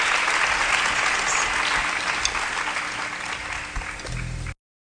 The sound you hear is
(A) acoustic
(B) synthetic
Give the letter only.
A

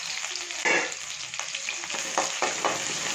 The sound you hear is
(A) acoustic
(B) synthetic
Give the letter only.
A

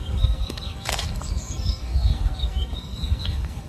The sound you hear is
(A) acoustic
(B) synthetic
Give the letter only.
B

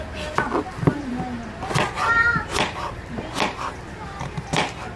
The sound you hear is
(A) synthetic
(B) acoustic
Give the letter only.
B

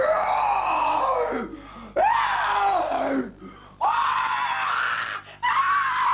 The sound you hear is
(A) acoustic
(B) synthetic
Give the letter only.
A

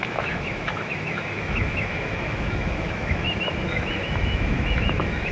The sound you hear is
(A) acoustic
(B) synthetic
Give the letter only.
B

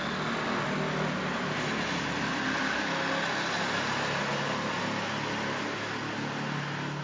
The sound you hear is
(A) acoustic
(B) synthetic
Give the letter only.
A